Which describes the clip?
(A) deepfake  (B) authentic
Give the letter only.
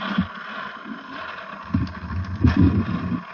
B